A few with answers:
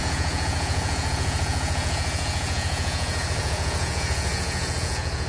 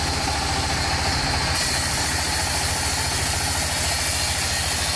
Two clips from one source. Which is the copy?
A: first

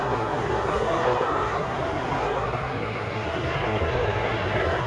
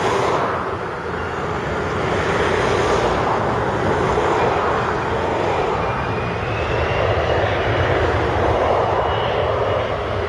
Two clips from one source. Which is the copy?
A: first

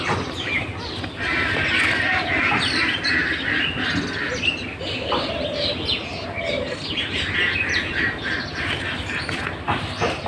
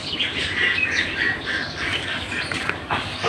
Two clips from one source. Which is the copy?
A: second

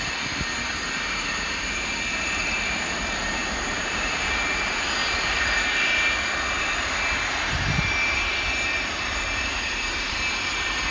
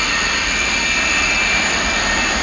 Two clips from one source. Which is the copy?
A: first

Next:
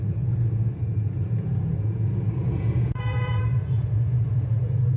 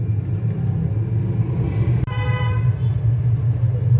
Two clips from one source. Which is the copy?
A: first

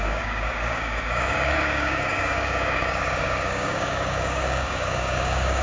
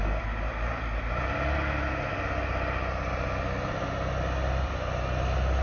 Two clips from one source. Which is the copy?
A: first